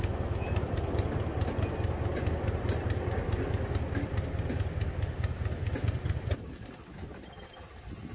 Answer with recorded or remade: recorded